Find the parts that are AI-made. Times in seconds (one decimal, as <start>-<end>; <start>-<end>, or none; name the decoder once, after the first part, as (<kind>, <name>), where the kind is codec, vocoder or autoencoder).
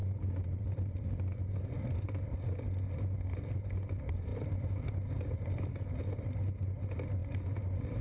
0.0-0.8 (vocoder, BigVGAN v2); 4.3-6.0